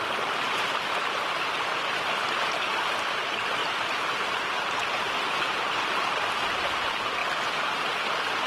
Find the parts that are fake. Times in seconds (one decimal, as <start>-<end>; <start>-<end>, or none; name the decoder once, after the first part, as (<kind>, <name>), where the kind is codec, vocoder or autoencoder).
0.0-1.7 (vocoder, BigVGAN v2); 3.2-7.2